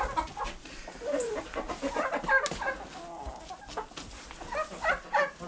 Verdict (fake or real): real